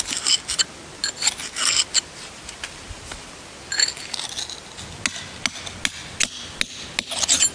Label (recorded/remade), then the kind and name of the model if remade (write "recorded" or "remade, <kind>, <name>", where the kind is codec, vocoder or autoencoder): recorded